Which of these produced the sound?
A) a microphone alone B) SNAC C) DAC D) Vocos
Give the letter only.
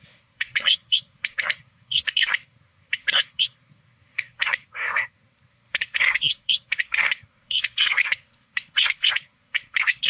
B